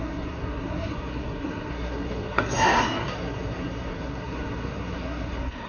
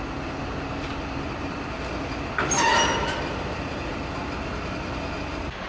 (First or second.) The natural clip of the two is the second